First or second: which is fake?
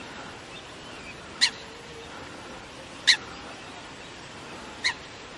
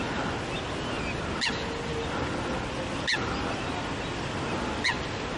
first